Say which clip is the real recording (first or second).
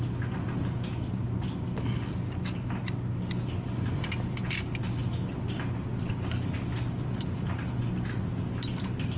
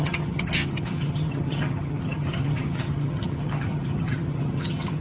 first